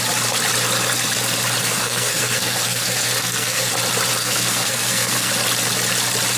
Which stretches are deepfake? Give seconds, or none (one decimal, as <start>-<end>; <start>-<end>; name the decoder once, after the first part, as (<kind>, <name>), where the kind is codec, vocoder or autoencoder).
1.6-3.7 (codec, SNAC); 4.2-5.3